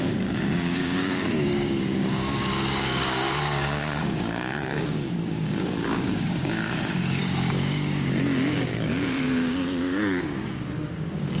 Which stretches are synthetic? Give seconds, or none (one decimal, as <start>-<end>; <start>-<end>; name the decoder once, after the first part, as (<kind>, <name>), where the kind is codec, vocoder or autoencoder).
0.0-11.4 (codec, DAC)